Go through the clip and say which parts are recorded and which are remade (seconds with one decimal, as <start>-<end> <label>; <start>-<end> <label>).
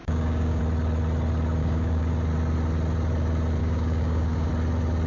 0.0-0.6 remade; 0.6-1.6 recorded; 1.6-2.1 remade; 2.1-3.6 recorded; 3.6-4.5 remade; 4.5-5.1 recorded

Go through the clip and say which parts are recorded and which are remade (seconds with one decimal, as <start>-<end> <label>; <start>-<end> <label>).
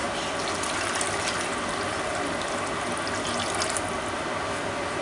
0.0-5.0 recorded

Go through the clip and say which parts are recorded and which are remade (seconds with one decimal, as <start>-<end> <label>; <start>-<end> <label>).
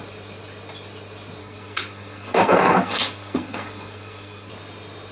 0.0-1.4 recorded; 1.4-4.5 remade; 4.5-5.1 recorded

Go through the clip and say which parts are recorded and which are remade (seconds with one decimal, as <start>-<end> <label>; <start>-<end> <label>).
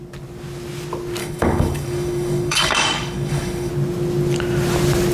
0.0-1.2 recorded; 1.2-3.7 remade; 3.7-5.1 recorded